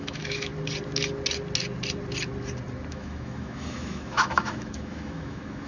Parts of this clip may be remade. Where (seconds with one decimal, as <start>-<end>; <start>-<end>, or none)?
0.0-0.5; 2.9-5.7